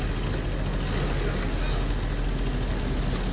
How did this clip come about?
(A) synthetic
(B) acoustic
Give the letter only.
B